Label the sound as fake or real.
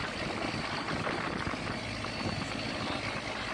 real